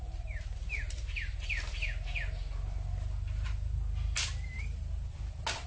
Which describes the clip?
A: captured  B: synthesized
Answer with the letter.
A